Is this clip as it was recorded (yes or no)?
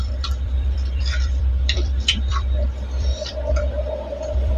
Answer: no